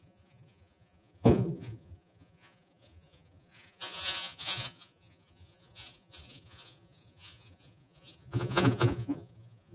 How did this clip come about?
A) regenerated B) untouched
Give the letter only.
A